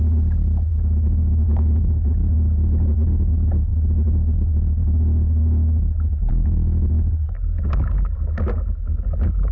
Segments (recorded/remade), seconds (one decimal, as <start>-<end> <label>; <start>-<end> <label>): 0.0-0.7 recorded; 0.7-2.1 remade; 2.1-6.3 recorded; 6.3-6.9 remade; 6.9-9.5 recorded

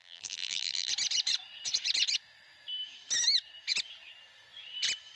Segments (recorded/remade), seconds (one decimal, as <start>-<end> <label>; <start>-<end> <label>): 0.0-0.9 remade; 0.9-5.2 recorded

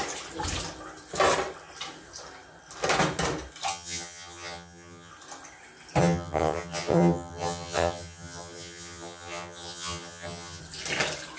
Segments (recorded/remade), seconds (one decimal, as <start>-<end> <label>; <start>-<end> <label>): 0.0-3.7 recorded; 3.7-5.1 remade; 5.1-6.0 recorded; 6.0-10.6 remade; 10.6-11.4 recorded

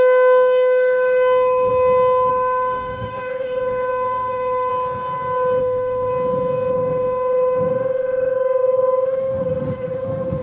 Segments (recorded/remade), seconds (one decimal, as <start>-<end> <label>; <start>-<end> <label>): 0.0-1.7 remade; 1.7-2.3 recorded; 2.3-4.7 remade; 4.7-5.6 recorded; 5.6-6.1 remade; 6.1-6.7 recorded; 6.7-10.4 remade

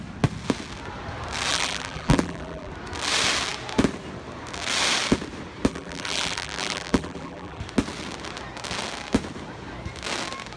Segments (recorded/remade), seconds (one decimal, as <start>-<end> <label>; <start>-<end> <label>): 0.0-1.5 recorded; 1.5-2.7 remade; 2.7-5.7 recorded; 5.7-7.6 remade; 7.6-10.6 recorded

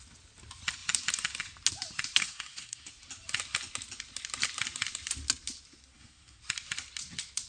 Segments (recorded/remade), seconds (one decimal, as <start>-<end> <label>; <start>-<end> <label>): 0.0-2.2 recorded; 2.2-2.9 remade; 2.9-5.9 recorded; 5.9-6.4 remade; 6.4-7.5 recorded

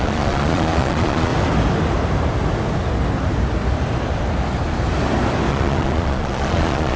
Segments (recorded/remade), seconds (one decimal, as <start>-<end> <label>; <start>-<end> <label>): 0.0-1.3 remade; 1.3-5.5 recorded; 5.5-7.0 remade